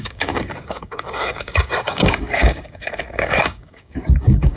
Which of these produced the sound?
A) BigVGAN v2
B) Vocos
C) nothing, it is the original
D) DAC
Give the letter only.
D